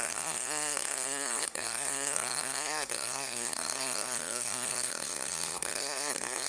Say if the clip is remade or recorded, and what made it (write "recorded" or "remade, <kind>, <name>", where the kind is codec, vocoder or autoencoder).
remade, codec, SNAC